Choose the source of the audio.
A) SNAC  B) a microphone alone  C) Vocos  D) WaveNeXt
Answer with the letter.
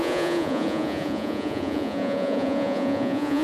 C